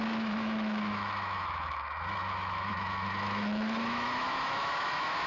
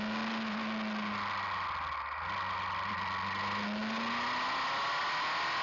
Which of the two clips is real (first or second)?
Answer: second